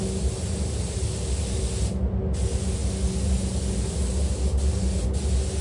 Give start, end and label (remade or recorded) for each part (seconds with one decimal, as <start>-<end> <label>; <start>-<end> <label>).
0.0-5.6 recorded